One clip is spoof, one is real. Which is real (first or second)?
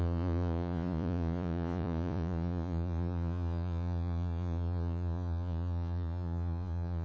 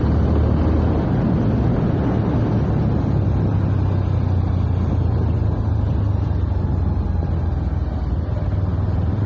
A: second